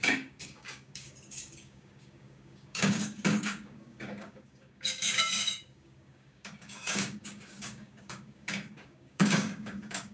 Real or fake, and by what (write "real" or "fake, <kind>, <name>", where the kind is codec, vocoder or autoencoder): fake, codec, DAC